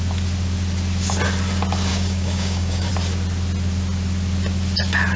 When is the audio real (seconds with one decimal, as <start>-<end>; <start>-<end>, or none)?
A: 0.0-1.9; 2.9-5.2